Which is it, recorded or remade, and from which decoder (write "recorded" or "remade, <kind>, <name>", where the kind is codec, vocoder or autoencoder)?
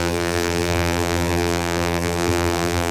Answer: remade, vocoder, BigVGAN v2